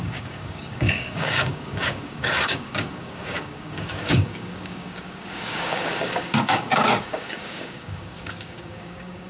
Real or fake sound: fake